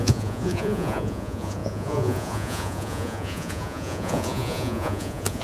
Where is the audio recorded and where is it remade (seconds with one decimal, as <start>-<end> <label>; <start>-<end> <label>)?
0.0-5.4 remade